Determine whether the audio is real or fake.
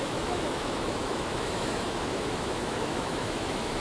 fake